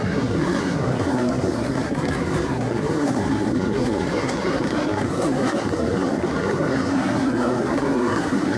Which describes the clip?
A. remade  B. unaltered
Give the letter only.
A